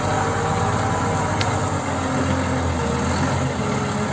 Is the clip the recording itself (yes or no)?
yes